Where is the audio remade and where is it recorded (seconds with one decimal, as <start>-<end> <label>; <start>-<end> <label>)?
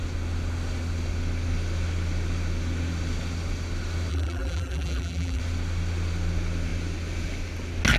0.0-4.1 recorded; 4.1-5.4 remade; 5.4-8.0 recorded